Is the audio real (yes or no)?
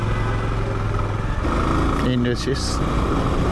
yes